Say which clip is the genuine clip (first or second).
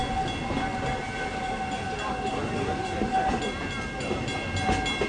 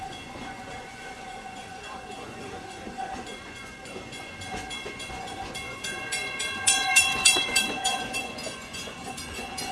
first